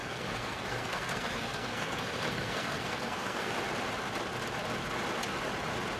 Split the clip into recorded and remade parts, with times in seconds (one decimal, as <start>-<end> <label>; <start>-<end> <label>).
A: 0.0-3.6 remade; 3.6-6.0 recorded